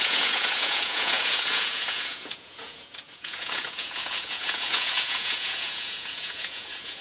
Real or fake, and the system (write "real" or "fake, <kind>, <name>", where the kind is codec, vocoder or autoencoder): fake, vocoder, Vocos